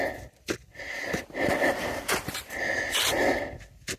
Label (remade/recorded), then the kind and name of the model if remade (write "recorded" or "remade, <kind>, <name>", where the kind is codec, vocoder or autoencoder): recorded